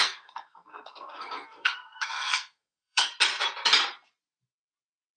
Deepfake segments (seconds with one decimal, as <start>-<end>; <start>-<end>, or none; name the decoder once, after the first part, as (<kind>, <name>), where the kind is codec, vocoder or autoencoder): 0.0-3.1 (codec, SNAC)